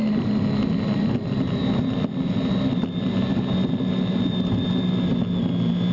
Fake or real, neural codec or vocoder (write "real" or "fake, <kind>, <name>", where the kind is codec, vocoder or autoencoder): real